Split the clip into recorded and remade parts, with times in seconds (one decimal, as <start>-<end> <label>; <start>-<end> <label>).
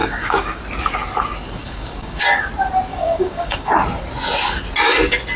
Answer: 0.0-0.6 remade; 0.6-1.6 recorded; 1.6-2.5 remade; 2.5-2.9 recorded; 2.9-3.7 remade; 3.7-5.4 recorded